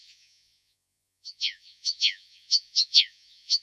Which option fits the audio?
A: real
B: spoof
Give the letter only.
B